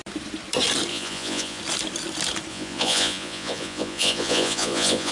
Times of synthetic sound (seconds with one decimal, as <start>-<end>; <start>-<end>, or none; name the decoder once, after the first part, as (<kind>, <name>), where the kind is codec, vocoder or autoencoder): 0.9-1.6 (vocoder, Vocos); 2.5-5.1